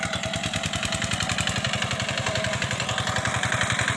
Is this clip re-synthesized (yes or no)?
yes